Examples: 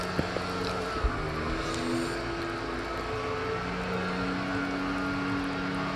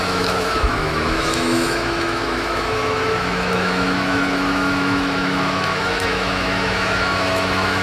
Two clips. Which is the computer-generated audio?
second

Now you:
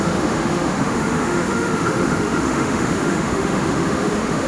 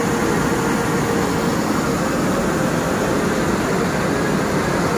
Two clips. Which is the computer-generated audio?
first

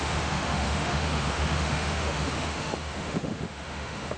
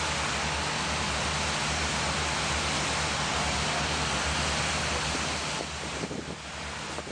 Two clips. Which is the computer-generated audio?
first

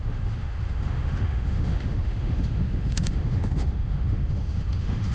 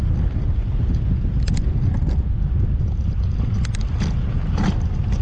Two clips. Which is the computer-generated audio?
first